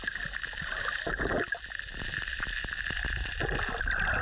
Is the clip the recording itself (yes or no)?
yes